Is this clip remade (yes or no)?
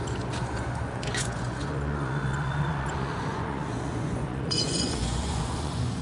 yes